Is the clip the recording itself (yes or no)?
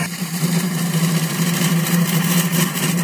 no